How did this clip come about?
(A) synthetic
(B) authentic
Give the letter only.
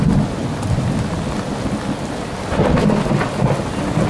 B